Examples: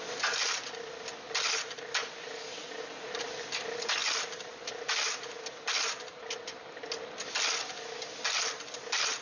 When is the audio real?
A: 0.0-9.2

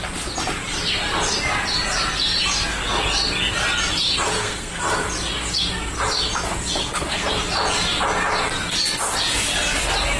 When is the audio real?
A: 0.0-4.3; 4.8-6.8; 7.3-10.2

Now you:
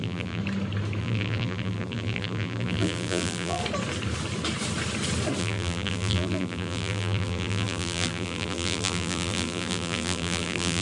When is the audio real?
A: 0.4-1.0; 3.6-5.4

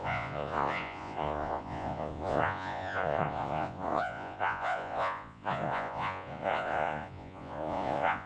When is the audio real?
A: none

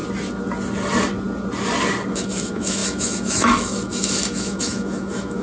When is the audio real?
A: 0.0-2.1

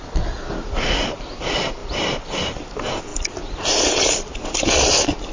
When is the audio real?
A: 0.0-3.1; 4.7-5.3

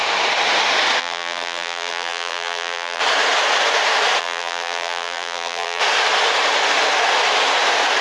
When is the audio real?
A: 0.0-1.0; 3.0-4.2; 5.8-8.0